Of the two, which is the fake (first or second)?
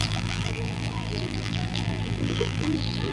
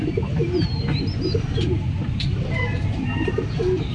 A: first